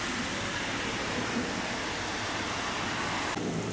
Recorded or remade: recorded